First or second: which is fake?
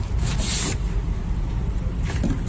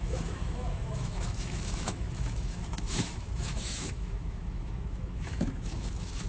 second